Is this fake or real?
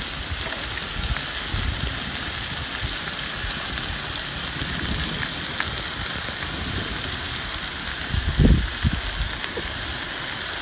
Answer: real